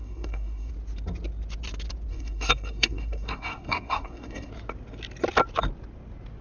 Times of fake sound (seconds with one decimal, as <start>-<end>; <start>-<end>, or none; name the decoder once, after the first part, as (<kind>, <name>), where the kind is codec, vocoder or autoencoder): 0.0-0.7 (codec, SNAC); 2.1-4.5